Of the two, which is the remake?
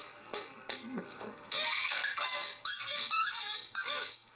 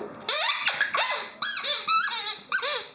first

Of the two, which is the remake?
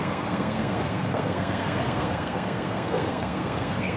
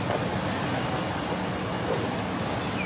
first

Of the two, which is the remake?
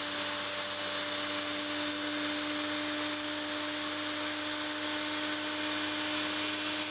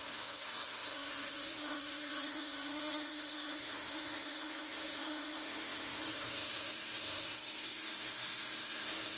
second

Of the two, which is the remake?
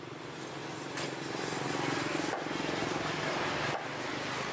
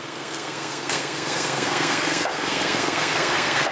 second